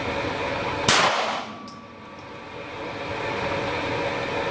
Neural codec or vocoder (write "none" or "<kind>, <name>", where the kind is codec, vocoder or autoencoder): none